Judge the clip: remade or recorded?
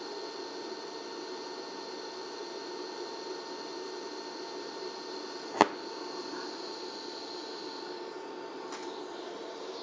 recorded